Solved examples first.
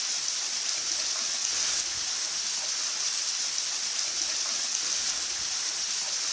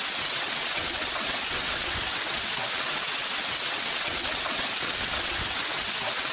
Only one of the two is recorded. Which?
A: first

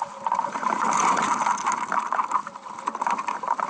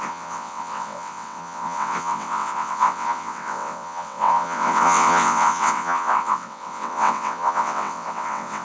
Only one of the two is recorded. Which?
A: first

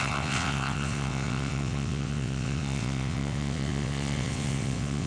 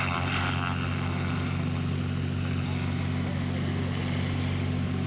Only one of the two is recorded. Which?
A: second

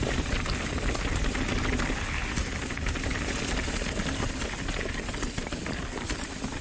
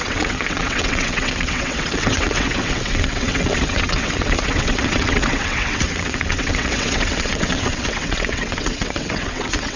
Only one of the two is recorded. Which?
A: first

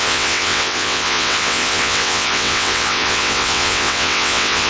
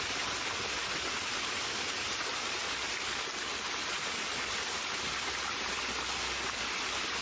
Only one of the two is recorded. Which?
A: second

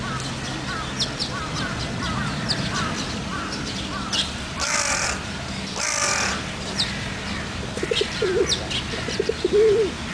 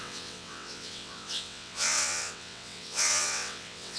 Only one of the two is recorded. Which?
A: first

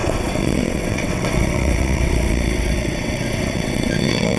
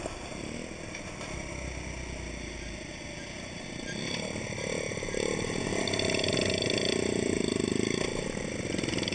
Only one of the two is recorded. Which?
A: second